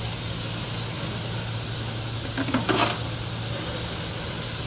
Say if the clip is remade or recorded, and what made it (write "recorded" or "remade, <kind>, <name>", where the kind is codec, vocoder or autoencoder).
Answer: recorded